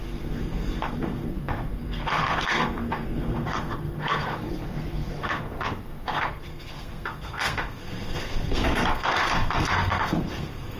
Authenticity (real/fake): fake